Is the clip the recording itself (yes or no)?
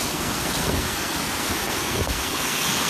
no